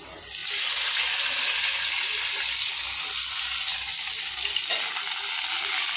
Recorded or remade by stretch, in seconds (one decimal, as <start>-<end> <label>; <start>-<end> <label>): 0.0-6.0 recorded